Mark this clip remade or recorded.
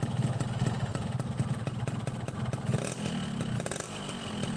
recorded